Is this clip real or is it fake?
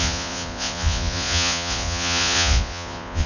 fake